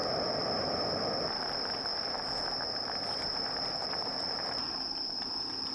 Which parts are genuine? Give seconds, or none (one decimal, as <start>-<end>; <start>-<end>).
0.0-5.7